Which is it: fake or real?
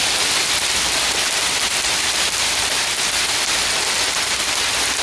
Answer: real